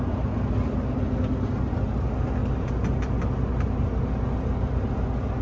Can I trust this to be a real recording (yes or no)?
yes